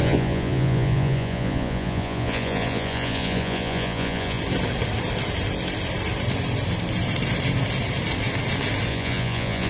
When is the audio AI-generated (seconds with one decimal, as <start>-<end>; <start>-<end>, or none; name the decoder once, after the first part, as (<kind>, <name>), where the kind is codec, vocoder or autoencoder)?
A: 0.0-4.4 (vocoder, Vocos); 8.9-9.7